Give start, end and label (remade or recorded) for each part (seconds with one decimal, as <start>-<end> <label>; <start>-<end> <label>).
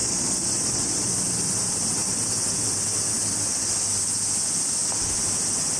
0.0-1.1 remade; 1.1-5.8 recorded